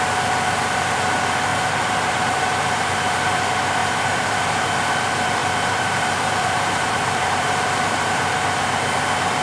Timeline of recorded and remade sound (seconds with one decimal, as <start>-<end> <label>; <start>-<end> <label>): 0.0-1.5 recorded; 1.5-2.9 remade; 2.9-3.8 recorded; 3.8-4.4 remade; 4.4-5.4 recorded; 5.4-7.9 remade; 7.9-9.4 recorded